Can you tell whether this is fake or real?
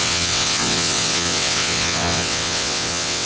fake